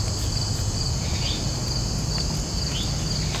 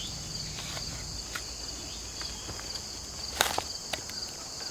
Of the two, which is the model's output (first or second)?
second